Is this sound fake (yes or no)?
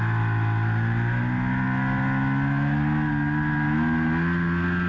no